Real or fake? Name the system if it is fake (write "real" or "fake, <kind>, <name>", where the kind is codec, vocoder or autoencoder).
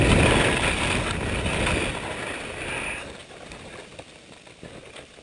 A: real